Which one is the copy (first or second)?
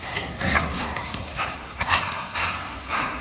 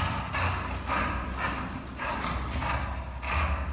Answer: first